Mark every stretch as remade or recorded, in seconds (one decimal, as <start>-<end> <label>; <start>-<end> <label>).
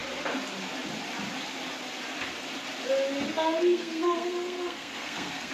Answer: 0.0-3.3 recorded; 3.3-5.5 remade